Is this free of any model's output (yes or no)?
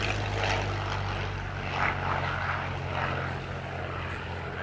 yes